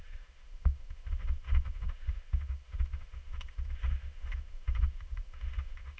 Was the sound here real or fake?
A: fake